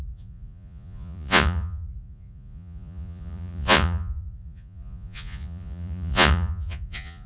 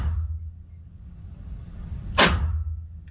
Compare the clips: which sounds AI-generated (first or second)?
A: first